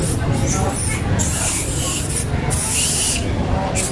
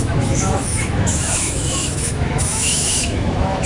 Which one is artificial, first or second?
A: second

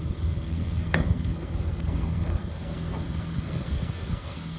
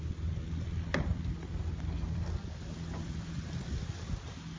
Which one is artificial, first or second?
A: first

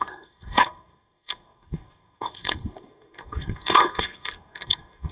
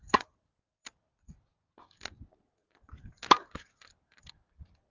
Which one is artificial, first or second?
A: first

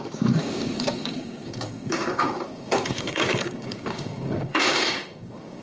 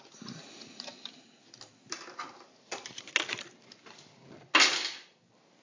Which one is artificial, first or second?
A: first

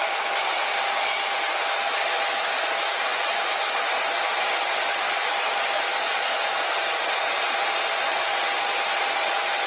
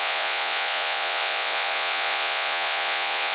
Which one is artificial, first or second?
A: second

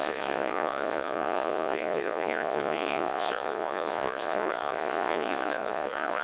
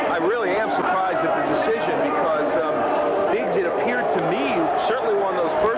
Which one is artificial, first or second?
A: first